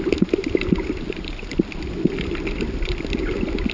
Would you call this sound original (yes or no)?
yes